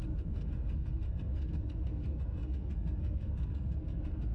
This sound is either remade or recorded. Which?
remade